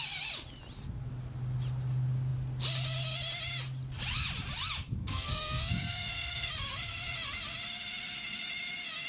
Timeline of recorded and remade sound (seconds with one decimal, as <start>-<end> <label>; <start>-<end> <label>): 0.0-5.0 recorded; 5.0-6.5 remade; 6.5-9.1 recorded